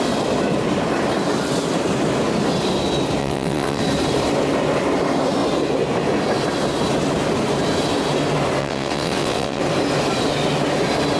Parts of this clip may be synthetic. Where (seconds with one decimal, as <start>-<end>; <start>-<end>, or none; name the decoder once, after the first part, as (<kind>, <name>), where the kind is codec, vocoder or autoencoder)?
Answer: 3.2-3.8 (vocoder, WaveNeXt); 8.6-9.6